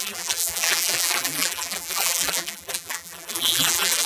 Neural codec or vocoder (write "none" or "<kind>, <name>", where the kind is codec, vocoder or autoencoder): vocoder, BigVGAN v2